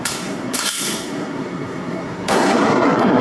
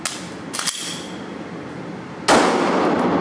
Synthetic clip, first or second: first